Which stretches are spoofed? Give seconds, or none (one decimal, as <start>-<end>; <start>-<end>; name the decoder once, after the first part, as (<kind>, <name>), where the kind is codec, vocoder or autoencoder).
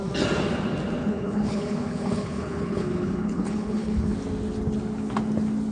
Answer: 1.0-4.1 (codec, HILCodec)